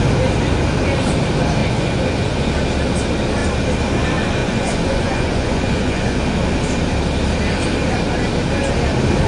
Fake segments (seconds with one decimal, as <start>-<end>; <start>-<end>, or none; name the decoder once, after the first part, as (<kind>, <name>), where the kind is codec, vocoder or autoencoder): 1.6-2.5 (vocoder, Vocos); 4.4-6.2